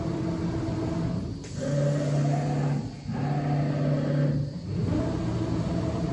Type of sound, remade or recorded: recorded